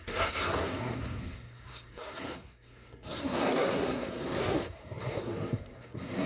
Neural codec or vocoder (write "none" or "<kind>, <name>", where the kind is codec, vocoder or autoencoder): codec, SNAC